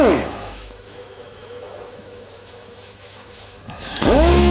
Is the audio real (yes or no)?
no